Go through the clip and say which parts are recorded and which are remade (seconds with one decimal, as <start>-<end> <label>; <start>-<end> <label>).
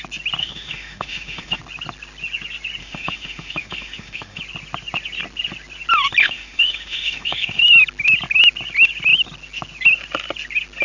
0.0-0.4 recorded; 0.4-1.6 remade; 1.6-2.8 recorded; 2.8-4.4 remade; 4.4-6.2 recorded; 6.2-7.6 remade; 7.6-10.8 recorded